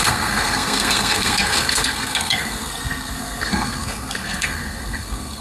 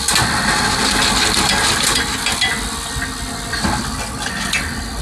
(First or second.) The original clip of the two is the second